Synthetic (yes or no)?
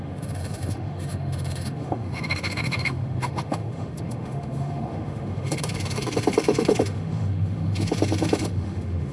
yes